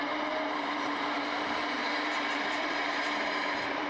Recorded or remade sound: remade